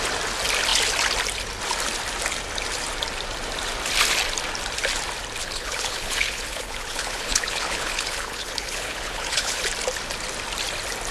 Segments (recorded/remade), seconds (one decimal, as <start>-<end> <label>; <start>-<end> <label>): 0.0-5.4 recorded; 5.4-9.6 remade; 9.6-11.1 recorded